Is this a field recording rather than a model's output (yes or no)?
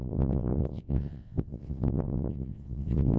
no